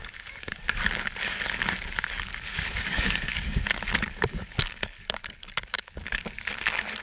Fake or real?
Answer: fake